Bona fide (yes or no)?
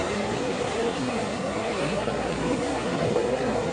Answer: no